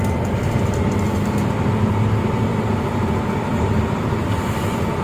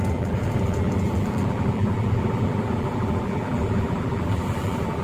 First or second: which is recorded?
first